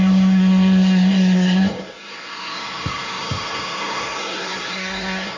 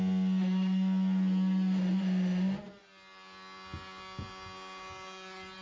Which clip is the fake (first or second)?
first